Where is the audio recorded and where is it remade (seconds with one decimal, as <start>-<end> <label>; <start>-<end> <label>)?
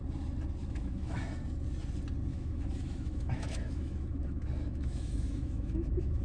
0.0-0.6 recorded; 0.6-1.2 remade; 1.2-2.3 recorded; 2.3-6.2 remade